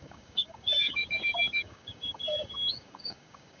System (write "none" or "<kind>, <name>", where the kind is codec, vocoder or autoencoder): codec, DAC